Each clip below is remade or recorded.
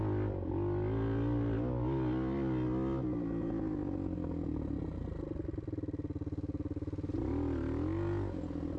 recorded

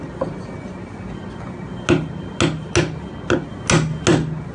recorded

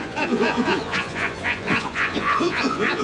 remade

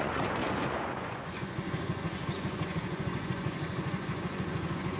remade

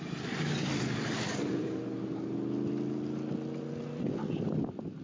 recorded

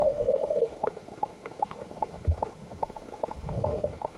remade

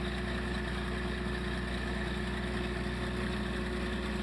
recorded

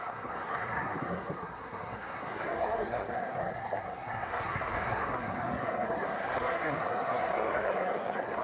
remade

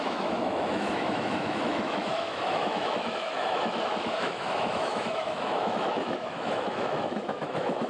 remade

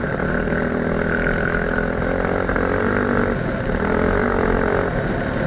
recorded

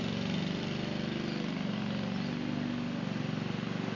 recorded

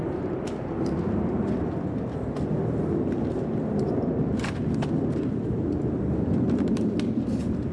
remade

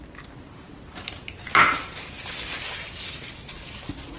recorded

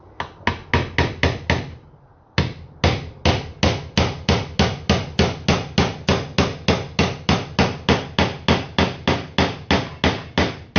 recorded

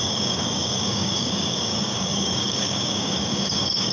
remade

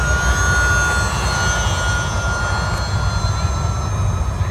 recorded